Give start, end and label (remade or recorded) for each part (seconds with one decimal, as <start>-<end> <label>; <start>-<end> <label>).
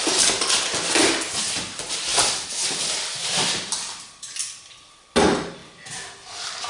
0.0-2.1 recorded; 2.1-4.4 remade; 4.4-6.7 recorded